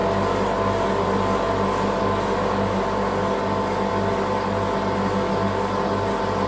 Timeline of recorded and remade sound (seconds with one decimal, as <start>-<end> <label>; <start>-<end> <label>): 0.0-6.5 recorded